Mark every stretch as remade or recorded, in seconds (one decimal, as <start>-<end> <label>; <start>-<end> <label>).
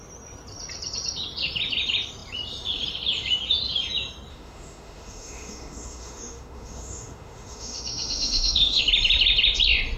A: 0.0-4.3 recorded; 4.3-8.8 remade; 8.8-10.0 recorded